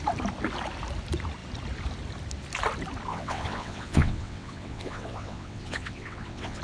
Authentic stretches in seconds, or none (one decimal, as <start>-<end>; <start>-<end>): 0.0-3.1